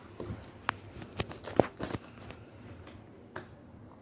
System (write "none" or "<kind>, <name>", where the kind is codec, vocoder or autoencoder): none